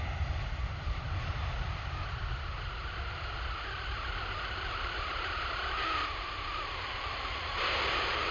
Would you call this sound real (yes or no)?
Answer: yes